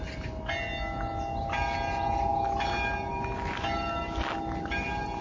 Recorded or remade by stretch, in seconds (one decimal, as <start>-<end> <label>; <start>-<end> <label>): 0.0-5.2 recorded